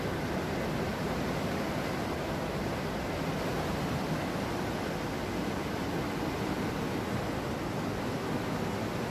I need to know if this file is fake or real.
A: real